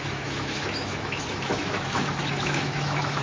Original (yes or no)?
no